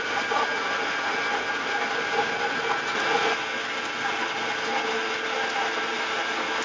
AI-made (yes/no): no